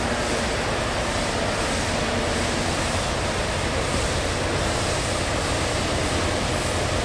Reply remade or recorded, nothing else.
recorded